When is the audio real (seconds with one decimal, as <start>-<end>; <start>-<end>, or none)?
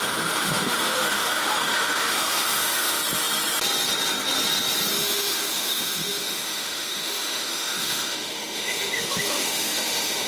3.0-4.9